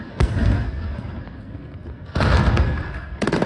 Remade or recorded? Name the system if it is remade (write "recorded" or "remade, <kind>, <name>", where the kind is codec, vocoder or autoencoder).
remade, codec, SNAC